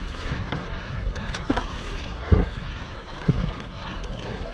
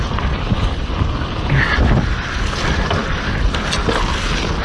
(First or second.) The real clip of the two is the second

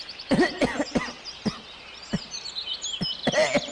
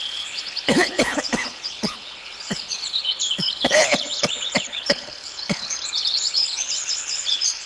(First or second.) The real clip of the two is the first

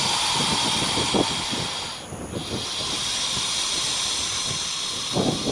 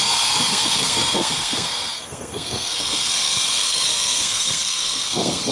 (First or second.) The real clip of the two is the first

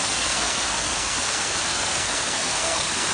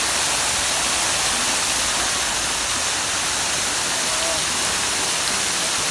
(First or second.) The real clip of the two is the second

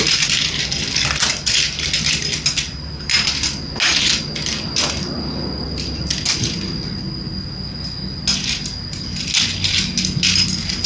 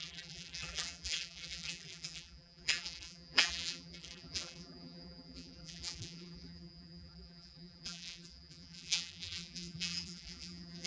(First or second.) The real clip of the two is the first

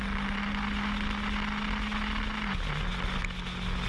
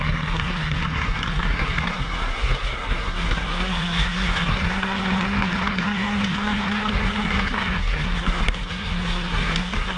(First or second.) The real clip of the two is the first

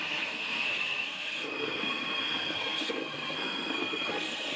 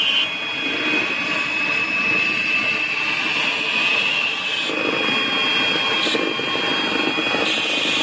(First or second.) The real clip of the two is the second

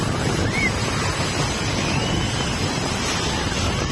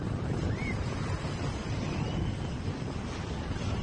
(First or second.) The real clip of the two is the first